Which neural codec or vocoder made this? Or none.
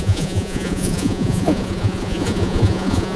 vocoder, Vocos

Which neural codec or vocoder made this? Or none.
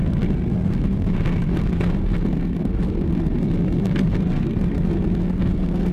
codec, SNAC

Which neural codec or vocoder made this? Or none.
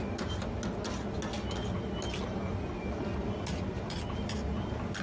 none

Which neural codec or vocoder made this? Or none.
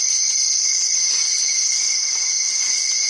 none